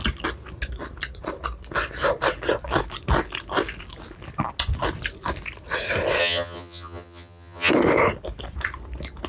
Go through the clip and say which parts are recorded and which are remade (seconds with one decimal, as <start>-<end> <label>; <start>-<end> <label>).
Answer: 0.0-6.2 recorded; 6.2-7.7 remade; 7.7-9.3 recorded